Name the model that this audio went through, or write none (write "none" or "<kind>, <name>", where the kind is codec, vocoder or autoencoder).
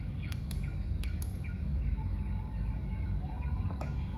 codec, DAC